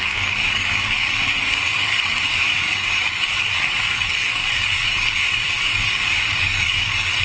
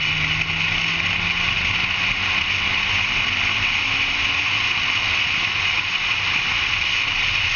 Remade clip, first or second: first